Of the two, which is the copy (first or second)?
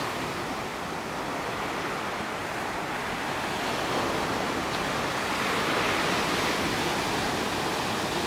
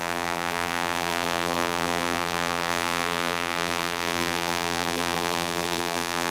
second